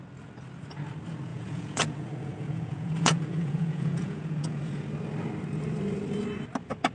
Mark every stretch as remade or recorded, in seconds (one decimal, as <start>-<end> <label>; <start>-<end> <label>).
0.0-1.3 recorded; 1.3-4.8 remade; 4.8-6.9 recorded